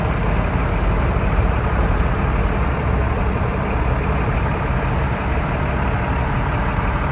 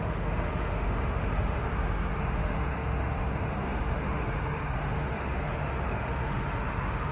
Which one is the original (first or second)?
first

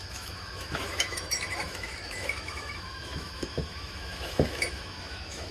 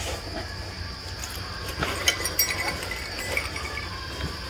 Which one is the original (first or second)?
second